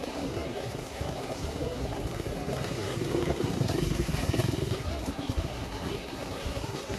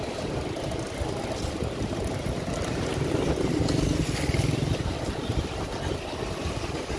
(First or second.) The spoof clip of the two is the first